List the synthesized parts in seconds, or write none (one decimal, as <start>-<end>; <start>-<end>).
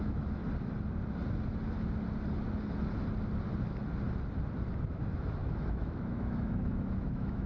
0.0-0.4; 4.9-7.5